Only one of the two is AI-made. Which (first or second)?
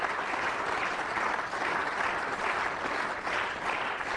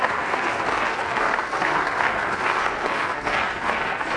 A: second